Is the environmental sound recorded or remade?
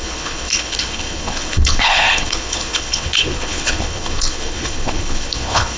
remade